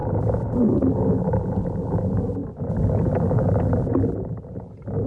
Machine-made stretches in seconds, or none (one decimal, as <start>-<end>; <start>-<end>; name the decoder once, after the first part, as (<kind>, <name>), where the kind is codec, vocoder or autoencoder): none